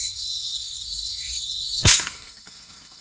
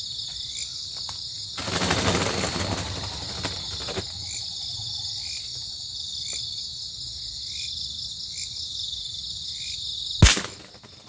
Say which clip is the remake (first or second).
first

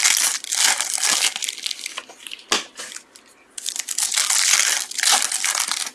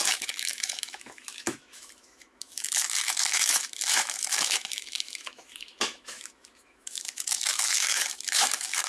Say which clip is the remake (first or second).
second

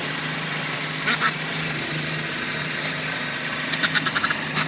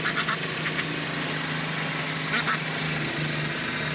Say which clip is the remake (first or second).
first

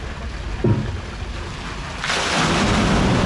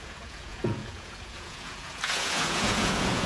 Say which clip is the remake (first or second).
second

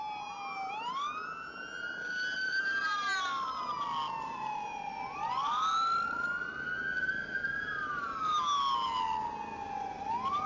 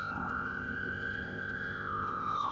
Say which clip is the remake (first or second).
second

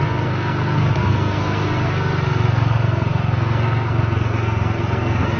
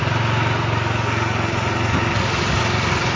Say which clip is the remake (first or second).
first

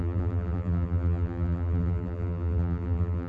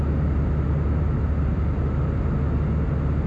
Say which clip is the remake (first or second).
first